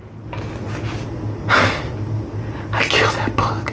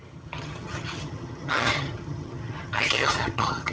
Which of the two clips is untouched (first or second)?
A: first